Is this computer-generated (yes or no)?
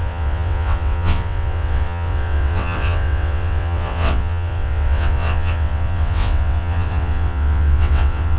yes